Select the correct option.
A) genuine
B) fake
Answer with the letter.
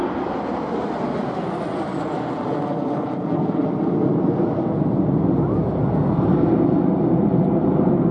A